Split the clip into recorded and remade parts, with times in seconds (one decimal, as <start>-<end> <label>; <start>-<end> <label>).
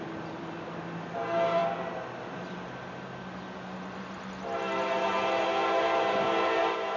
0.0-7.0 recorded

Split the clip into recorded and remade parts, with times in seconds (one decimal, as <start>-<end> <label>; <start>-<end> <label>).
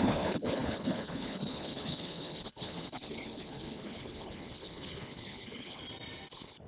0.0-5.8 remade; 5.8-6.3 recorded; 6.3-6.7 remade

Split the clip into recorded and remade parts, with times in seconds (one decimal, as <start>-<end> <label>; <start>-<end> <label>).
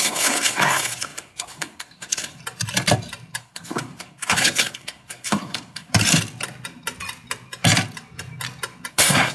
0.0-2.4 remade; 2.4-3.4 recorded; 3.4-5.9 remade; 5.9-8.9 recorded; 8.9-9.3 remade